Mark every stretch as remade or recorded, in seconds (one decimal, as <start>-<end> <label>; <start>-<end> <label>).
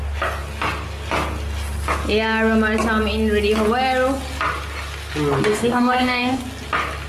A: 0.0-5.5 recorded; 5.5-6.4 remade; 6.4-7.1 recorded